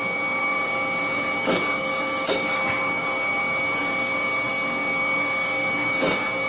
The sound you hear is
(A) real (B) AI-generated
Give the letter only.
B